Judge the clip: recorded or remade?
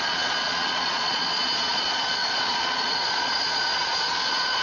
remade